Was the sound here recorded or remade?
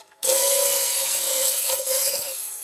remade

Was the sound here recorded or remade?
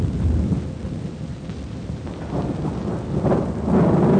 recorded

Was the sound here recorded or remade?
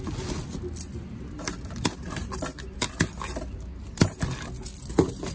recorded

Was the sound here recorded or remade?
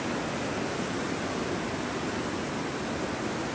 recorded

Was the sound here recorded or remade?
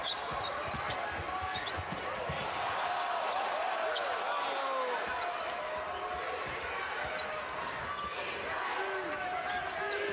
recorded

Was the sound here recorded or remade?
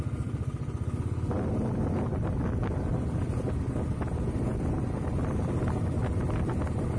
recorded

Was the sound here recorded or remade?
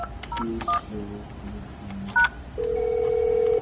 recorded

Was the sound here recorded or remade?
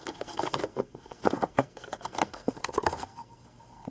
remade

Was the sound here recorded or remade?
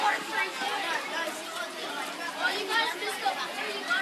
recorded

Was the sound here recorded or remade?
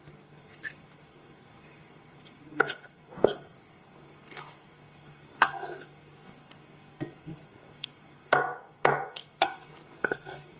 remade